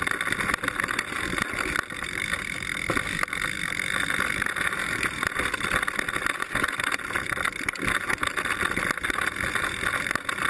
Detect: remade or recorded recorded